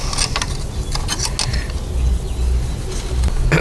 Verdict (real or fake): real